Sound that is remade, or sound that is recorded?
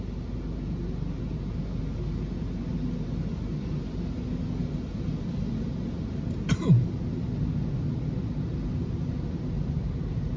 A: recorded